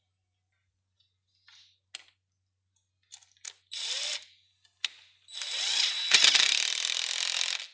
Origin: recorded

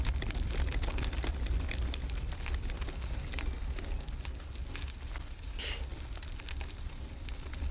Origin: recorded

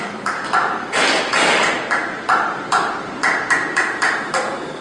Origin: remade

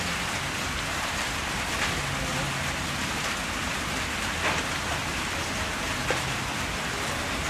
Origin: recorded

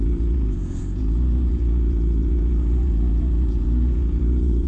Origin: remade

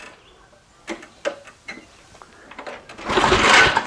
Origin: recorded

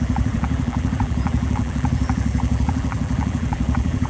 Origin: remade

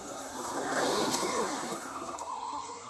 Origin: remade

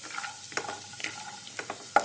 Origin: recorded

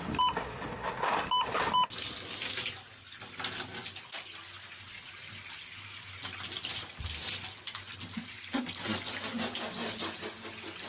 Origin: recorded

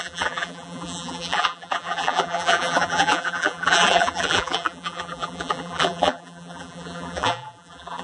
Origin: remade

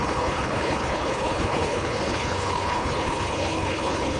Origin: remade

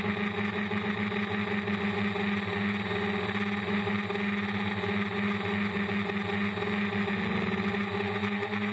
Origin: recorded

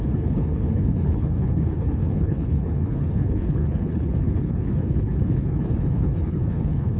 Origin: remade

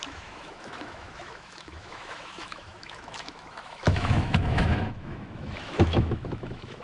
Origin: remade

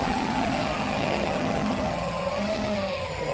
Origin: remade